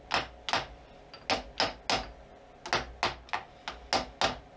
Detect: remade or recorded recorded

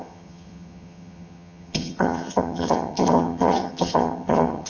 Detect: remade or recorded remade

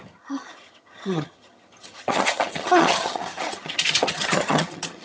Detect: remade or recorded remade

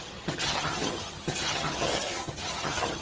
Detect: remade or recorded remade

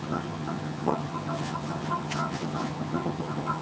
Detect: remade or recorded remade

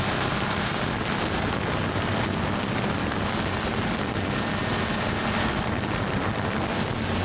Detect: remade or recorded recorded